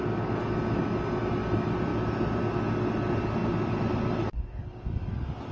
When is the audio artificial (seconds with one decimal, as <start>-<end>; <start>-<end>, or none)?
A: 3.4-4.5